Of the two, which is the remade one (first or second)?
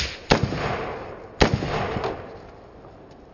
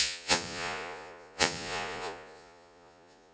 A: second